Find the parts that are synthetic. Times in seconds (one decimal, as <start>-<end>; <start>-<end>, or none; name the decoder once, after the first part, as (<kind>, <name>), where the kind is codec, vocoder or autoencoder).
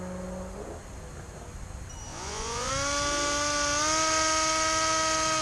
2.1-2.7 (vocoder, Vocos)